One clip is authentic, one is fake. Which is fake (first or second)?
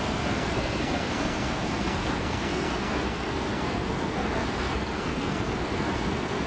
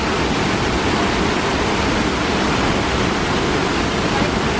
first